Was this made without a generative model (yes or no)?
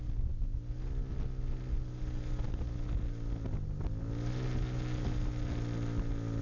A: yes